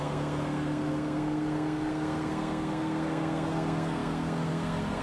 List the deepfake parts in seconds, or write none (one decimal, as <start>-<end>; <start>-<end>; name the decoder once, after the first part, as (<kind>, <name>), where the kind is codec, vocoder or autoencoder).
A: 0.0-5.0 (codec, SNAC)